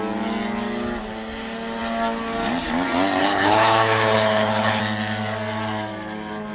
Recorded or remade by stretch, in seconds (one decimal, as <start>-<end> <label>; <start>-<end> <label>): 0.0-3.2 recorded; 3.2-4.8 remade; 4.8-6.5 recorded